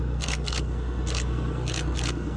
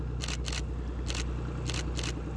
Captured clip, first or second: second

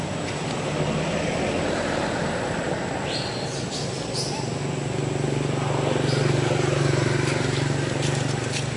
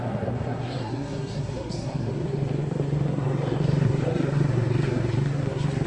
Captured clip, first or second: first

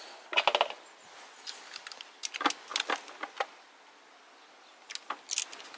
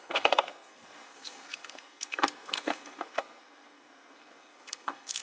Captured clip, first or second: first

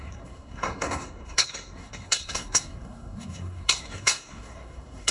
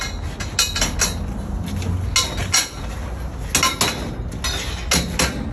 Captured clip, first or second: second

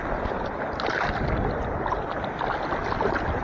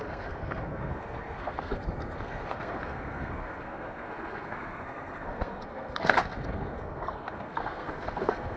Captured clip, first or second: first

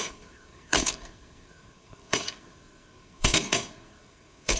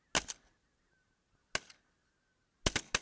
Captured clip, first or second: second